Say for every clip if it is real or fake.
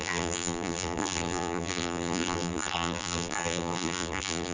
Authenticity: fake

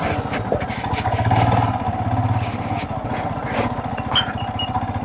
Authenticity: real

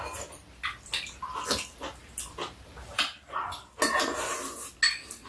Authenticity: real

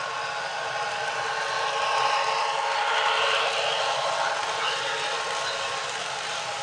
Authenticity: real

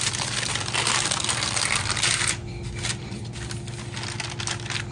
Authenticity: real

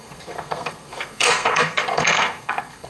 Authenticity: fake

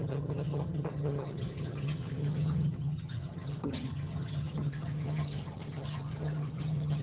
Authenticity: fake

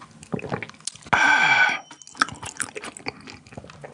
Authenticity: real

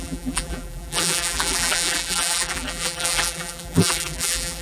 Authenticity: fake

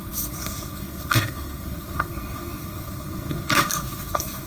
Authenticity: fake